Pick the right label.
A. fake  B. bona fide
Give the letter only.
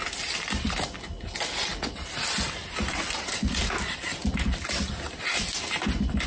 A